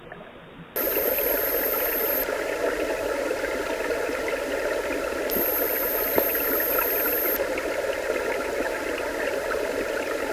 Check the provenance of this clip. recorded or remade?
recorded